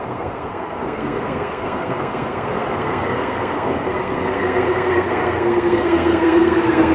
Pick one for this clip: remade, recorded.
remade